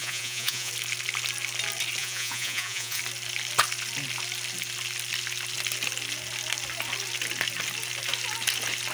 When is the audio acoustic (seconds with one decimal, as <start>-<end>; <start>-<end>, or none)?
0.7-2.0; 3.0-8.9